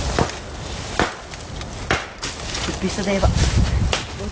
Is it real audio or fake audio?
real